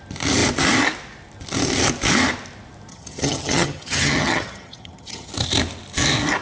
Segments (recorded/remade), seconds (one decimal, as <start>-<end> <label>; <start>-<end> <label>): 0.0-2.9 recorded; 2.9-5.3 remade; 5.3-6.4 recorded